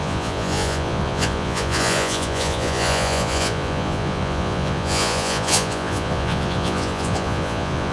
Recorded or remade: remade